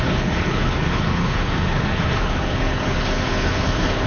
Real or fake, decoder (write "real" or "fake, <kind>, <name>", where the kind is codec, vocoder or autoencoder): fake, codec, HILCodec